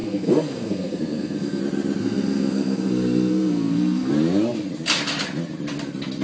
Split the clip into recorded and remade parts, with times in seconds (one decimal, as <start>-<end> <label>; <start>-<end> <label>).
0.0-1.6 remade; 1.6-2.0 recorded; 2.0-4.1 remade; 4.1-6.2 recorded